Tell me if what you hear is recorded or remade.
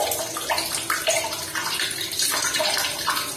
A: recorded